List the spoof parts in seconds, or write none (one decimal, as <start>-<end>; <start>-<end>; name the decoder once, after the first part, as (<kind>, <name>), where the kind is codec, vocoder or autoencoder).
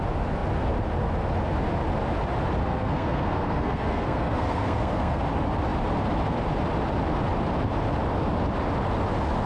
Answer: 2.6-5.2 (codec, SNAC)